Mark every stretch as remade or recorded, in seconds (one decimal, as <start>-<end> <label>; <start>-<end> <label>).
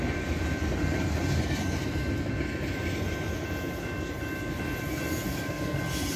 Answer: 0.0-5.3 recorded; 5.3-5.8 remade; 5.8-6.2 recorded